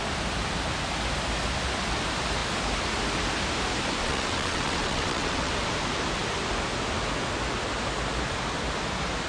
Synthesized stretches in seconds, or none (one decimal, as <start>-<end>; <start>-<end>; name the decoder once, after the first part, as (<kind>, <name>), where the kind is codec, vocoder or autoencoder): 4.0-5.5 (vocoder, WaveNeXt)